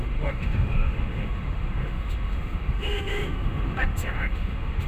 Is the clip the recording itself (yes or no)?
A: no